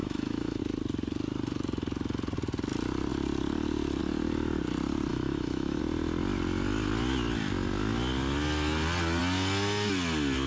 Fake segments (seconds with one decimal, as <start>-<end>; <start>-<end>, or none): 0.0-0.6; 5.1-5.8